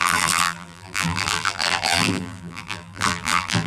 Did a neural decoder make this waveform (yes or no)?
yes